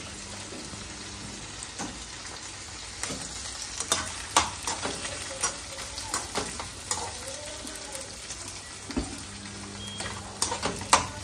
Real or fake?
real